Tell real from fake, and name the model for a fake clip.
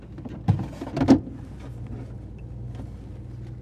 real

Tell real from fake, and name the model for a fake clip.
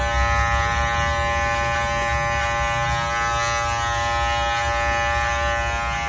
real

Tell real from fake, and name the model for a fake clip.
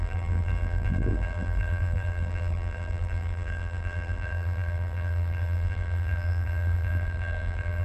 fake, vocoder, BigVGAN v2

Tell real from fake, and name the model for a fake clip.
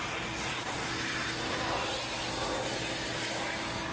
real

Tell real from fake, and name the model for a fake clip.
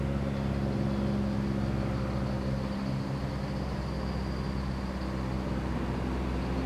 real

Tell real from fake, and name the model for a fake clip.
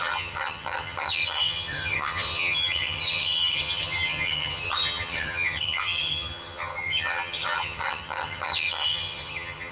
fake, vocoder, HiFi-GAN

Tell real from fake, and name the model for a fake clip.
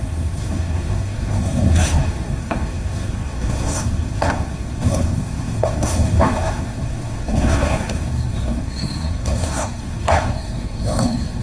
fake, codec, SNAC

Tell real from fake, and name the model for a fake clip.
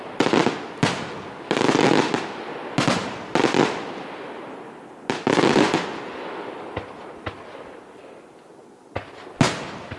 real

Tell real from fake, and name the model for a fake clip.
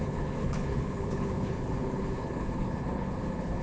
fake, codec, HILCodec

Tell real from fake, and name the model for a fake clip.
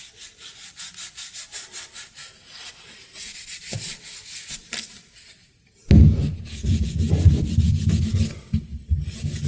real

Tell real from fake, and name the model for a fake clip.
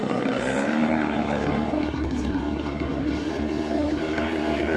fake, codec, SNAC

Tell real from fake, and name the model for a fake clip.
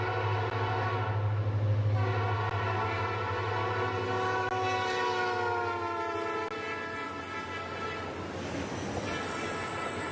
real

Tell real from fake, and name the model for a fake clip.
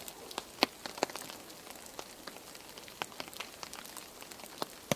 real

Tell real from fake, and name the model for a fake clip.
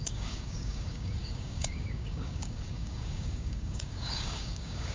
fake, codec, DAC